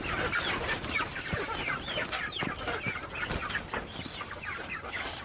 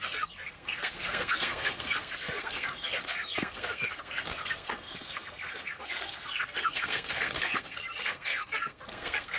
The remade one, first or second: second